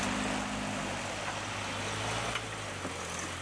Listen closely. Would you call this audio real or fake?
real